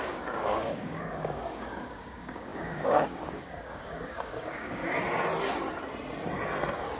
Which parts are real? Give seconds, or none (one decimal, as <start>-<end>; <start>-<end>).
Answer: 4.8-7.0